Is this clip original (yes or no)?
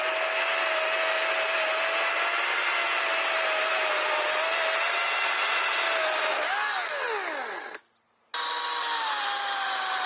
yes